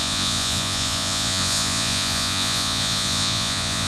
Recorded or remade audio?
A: remade